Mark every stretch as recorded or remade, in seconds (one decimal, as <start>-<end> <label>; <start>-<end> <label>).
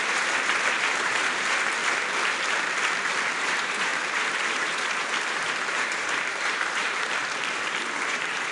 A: 0.0-1.8 remade; 1.8-3.4 recorded; 3.4-7.2 remade; 7.2-7.8 recorded; 7.8-8.5 remade